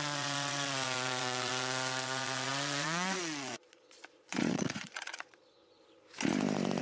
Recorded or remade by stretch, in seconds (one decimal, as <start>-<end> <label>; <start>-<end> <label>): 0.0-5.6 remade; 5.6-6.8 recorded